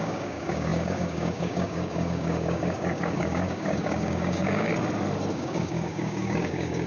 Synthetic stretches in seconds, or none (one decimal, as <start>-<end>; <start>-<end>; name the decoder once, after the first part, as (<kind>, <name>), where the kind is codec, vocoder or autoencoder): 0.0-4.7 (codec, DAC); 5.3-6.9